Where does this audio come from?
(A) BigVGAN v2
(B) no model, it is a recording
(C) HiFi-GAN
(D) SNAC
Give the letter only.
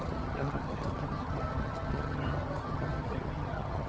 C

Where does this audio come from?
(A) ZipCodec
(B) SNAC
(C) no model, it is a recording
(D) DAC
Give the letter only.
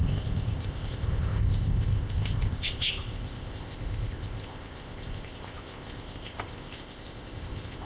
A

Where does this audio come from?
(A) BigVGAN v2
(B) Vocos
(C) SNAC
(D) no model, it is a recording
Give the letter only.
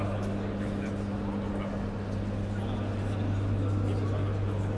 D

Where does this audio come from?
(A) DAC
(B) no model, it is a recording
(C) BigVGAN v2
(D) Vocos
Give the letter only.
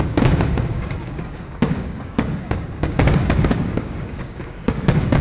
A